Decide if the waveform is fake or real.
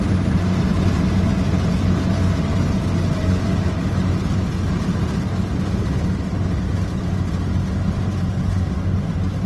real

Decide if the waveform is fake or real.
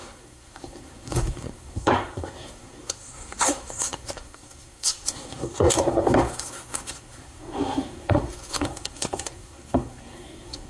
fake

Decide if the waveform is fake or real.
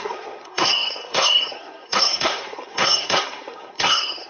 fake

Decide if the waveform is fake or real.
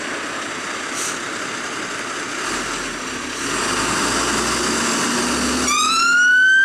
real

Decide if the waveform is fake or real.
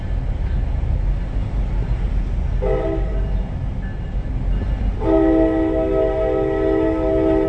real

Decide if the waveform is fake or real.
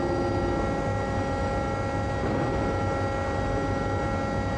real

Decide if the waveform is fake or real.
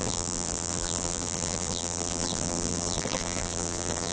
fake